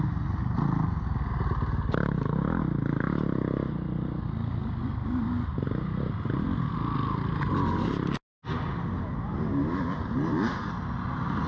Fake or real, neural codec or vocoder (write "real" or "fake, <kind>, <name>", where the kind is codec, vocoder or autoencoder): real